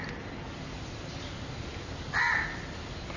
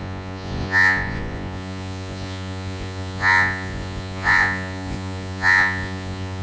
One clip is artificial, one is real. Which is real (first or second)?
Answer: first